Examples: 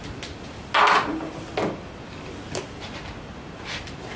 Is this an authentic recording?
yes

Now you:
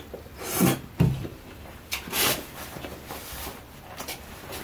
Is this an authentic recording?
yes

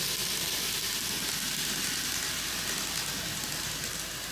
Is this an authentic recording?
yes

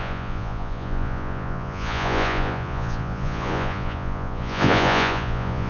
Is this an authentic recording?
no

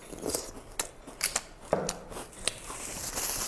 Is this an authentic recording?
yes